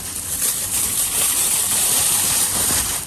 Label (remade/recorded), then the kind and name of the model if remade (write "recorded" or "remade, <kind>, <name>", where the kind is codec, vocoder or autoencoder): remade, vocoder, BigVGAN v2